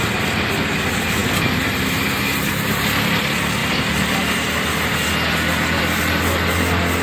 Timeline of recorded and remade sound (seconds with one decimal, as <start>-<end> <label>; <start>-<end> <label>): 0.0-7.0 recorded